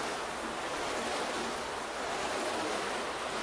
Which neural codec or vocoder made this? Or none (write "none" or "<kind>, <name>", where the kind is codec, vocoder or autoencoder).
none